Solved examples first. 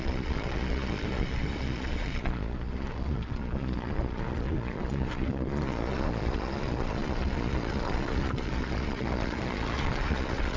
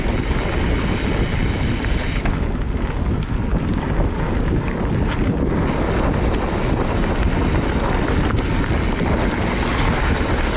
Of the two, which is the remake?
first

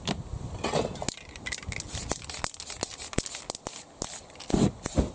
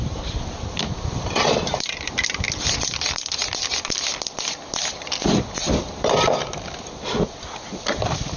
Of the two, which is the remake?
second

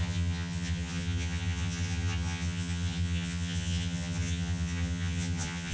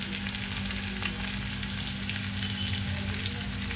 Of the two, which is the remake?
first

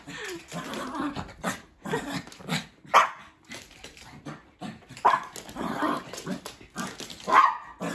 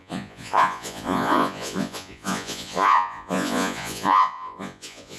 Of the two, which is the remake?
second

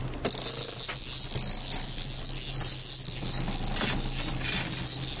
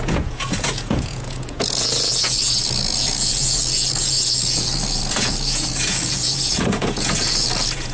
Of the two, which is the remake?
second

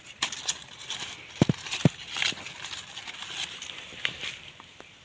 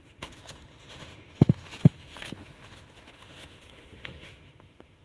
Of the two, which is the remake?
second